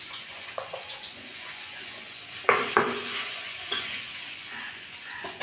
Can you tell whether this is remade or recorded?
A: remade